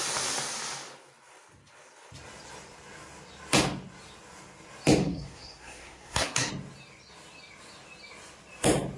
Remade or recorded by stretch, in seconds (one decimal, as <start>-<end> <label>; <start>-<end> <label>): 0.0-5.0 recorded; 5.0-6.5 remade; 6.5-9.0 recorded